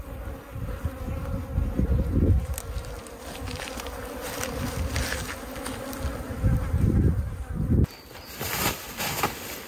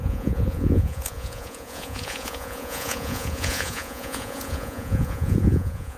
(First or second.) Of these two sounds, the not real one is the second